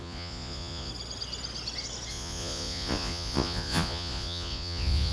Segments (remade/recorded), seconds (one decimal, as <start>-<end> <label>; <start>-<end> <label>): 0.0-0.9 remade; 0.9-2.1 recorded; 2.1-5.1 remade